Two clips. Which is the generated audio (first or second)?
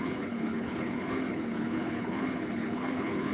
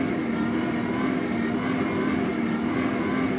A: first